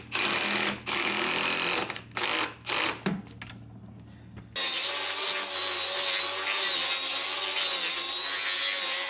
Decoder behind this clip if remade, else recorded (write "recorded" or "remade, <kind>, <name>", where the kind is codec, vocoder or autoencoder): recorded